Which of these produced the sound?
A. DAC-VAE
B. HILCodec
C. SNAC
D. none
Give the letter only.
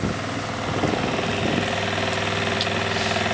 D